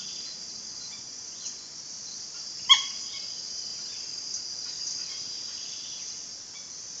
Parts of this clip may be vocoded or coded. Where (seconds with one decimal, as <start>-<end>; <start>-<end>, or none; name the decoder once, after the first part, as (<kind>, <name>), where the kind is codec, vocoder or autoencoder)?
0.6-1.8 (vocoder, Vocos)